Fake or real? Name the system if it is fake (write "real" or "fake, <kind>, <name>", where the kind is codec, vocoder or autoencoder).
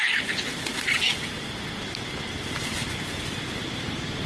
real